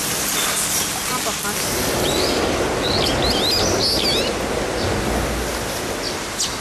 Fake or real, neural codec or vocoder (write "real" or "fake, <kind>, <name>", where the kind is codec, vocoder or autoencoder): real